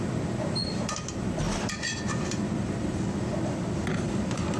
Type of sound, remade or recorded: remade